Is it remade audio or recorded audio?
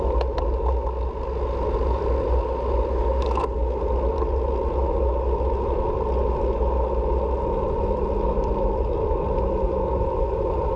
recorded